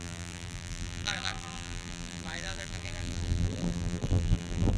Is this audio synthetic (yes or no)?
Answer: yes